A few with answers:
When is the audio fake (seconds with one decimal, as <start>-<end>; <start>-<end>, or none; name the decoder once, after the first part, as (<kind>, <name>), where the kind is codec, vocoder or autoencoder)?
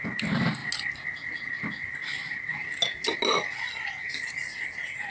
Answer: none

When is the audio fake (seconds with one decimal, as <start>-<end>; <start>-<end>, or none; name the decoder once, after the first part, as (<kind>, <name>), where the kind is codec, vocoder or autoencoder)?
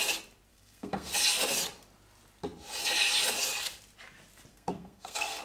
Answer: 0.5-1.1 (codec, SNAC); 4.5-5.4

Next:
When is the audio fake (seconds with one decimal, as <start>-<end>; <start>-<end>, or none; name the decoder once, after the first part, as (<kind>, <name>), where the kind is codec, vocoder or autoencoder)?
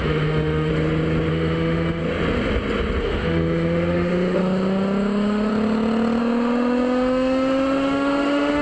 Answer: 0.0-0.7 (autoencoder, DAC-VAE); 1.3-2.0; 3.0-5.5; 6.2-8.6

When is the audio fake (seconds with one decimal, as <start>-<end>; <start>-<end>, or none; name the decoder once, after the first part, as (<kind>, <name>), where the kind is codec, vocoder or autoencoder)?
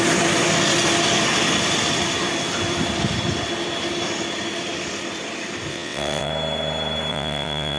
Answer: 5.7-6.3 (vocoder, WaveNeXt); 7.1-7.8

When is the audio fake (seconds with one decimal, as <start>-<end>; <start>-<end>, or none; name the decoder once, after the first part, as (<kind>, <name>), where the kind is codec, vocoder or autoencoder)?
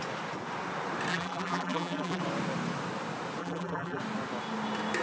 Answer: 1.1-2.2 (vocoder, BigVGAN v2); 3.4-4.0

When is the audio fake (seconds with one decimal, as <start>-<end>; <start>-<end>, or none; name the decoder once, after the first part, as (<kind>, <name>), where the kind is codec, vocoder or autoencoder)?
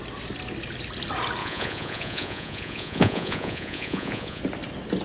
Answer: 1.4-4.4 (vocoder, Vocos)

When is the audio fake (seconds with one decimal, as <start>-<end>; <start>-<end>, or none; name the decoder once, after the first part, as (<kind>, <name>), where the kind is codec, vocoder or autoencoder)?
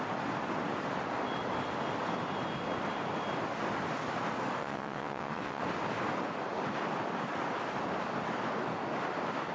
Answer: 4.6-5.6 (vocoder, WaveNeXt)